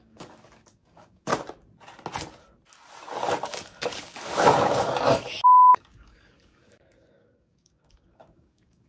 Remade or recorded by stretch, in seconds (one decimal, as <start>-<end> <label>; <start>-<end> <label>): 0.0-1.3 remade; 1.3-3.4 recorded; 3.4-8.9 remade